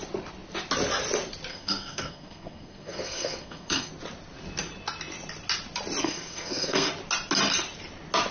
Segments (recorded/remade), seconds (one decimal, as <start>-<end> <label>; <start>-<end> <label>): 0.0-1.5 recorded; 1.5-3.9 remade; 3.9-6.0 recorded; 6.0-6.9 remade; 6.9-8.3 recorded